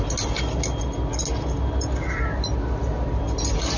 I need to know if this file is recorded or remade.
recorded